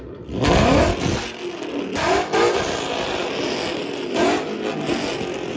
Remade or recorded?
recorded